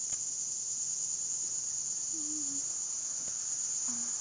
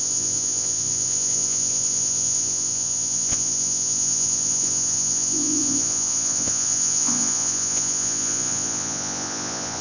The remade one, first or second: second